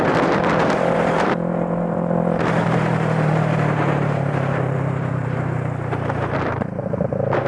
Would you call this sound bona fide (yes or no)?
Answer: no